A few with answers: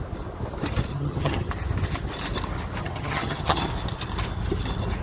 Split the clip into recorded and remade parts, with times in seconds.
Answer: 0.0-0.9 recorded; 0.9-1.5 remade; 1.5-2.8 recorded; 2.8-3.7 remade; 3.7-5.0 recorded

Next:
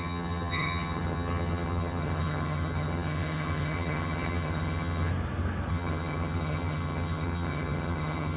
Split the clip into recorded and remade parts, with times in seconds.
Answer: 0.0-5.1 remade; 5.1-5.7 recorded; 5.7-8.4 remade

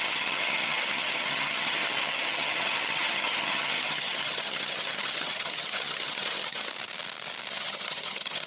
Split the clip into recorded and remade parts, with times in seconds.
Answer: 0.0-6.7 remade; 6.7-7.5 recorded; 7.5-8.5 remade

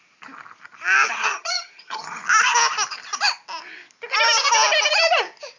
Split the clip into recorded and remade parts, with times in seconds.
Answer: 0.0-1.2 recorded; 1.2-2.2 remade; 2.2-5.6 recorded

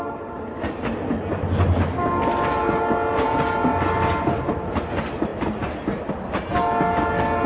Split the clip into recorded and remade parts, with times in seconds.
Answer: 0.0-7.5 recorded

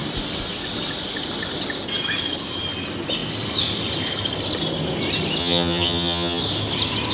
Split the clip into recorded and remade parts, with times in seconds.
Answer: 0.0-5.4 recorded; 5.4-6.4 remade; 6.4-7.1 recorded